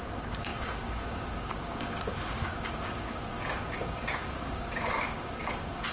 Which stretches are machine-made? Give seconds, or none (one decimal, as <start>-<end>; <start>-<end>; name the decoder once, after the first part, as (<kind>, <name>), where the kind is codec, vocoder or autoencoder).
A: 0.0-5.9 (codec, DAC)